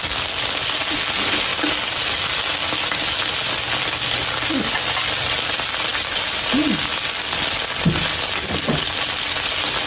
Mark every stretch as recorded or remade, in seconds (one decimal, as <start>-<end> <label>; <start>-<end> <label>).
0.0-9.9 recorded